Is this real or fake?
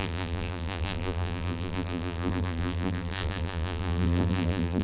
fake